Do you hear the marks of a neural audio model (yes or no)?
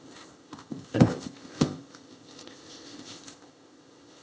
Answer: yes